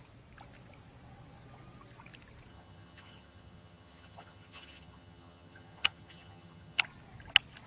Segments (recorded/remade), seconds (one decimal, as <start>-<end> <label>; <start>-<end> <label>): 0.0-2.5 recorded; 2.5-6.8 remade; 6.8-7.7 recorded